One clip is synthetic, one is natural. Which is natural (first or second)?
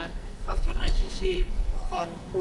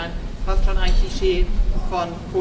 second